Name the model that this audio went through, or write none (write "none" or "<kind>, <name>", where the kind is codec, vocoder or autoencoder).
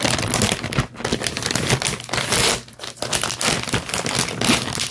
none